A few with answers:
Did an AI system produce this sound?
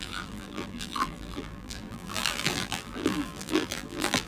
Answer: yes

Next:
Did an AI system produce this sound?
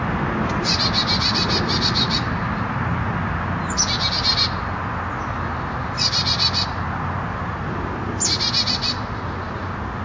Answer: no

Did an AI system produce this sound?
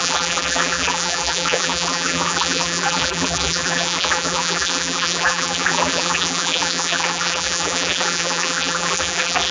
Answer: yes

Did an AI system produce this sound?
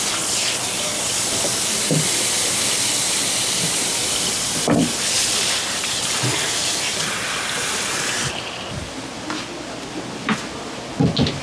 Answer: no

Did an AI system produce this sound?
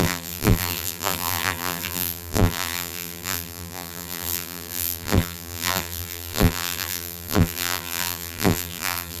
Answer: yes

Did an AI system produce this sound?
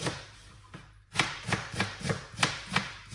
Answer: yes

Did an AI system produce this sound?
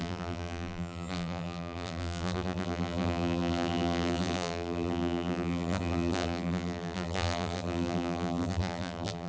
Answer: yes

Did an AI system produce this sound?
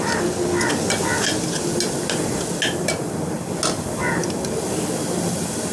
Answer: no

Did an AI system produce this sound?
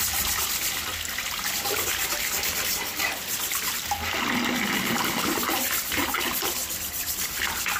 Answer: no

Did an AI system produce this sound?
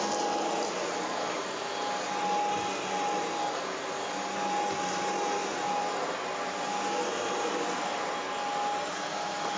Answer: no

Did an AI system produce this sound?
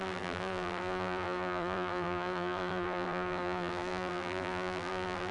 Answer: yes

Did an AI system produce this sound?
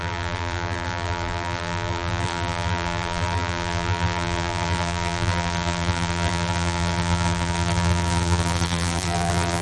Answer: yes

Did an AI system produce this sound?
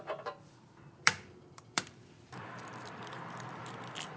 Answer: yes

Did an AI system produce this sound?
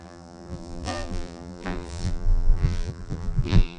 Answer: yes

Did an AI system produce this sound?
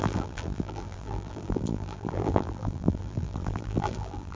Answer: yes